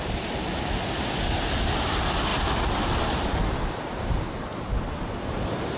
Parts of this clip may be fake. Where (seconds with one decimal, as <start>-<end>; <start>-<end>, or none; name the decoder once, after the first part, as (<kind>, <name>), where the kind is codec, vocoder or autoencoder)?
none